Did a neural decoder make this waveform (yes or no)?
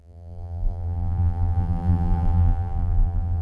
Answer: yes